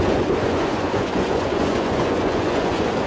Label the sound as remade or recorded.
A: remade